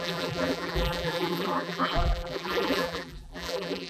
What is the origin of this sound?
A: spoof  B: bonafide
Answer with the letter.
A